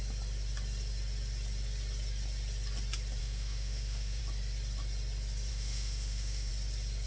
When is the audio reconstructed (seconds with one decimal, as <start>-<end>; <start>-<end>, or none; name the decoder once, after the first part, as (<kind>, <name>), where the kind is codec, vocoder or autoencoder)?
3.2-4.2 (autoencoder, DAC-VAE); 5.5-6.5